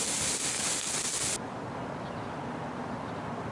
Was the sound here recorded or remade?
recorded